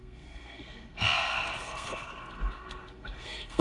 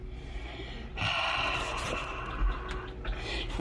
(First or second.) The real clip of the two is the second